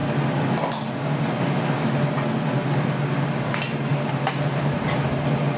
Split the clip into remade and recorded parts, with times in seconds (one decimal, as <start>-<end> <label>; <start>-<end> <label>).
0.0-3.9 recorded; 3.9-4.8 remade; 4.8-5.6 recorded